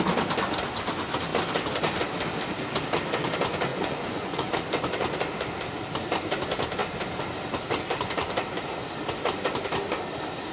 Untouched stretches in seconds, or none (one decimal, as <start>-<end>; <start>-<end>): 0.0-3.7; 4.5-10.5